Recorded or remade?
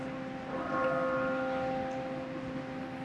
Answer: recorded